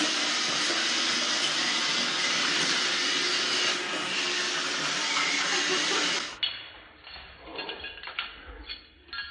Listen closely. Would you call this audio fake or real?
real